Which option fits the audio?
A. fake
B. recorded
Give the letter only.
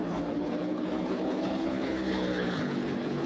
A